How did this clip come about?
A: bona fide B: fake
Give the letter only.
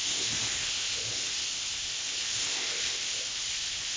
B